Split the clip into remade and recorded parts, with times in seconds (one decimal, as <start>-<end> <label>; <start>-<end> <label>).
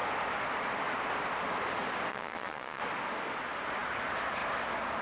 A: 0.0-2.1 recorded; 2.1-2.8 remade; 2.8-5.0 recorded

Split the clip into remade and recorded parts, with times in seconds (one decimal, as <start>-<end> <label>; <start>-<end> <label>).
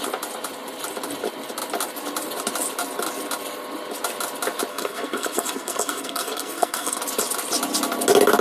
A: 0.0-4.7 recorded; 4.7-7.0 remade; 7.0-8.4 recorded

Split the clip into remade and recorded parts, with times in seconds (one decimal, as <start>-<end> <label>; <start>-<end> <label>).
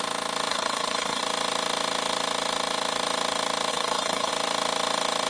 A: 0.0-0.5 recorded; 0.5-1.2 remade; 1.2-3.7 recorded; 3.7-4.3 remade; 4.3-5.3 recorded